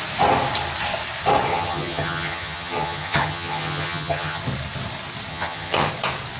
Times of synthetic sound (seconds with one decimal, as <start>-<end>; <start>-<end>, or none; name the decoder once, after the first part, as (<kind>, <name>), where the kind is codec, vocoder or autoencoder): 1.5-4.4 (vocoder, HiFi-GAN); 5.3-5.9